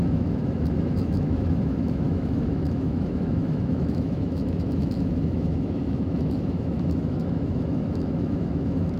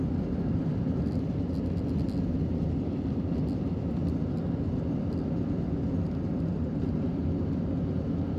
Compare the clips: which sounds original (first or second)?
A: second